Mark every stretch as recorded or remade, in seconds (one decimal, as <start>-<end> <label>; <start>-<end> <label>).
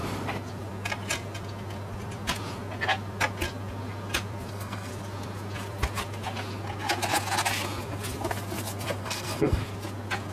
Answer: 0.0-4.5 recorded; 4.5-4.9 remade; 4.9-9.0 recorded; 9.0-9.6 remade; 9.6-10.3 recorded